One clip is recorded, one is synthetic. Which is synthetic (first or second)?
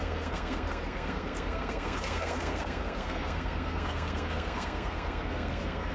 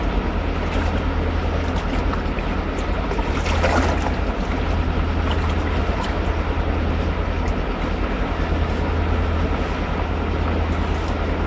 first